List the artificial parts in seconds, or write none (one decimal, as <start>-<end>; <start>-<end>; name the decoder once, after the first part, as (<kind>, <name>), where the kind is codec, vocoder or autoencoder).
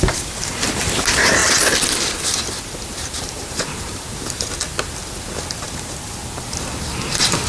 0.0-1.4 (vocoder, BigVGAN v2); 3.2-4.1; 5.6-6.2; 7.0-7.5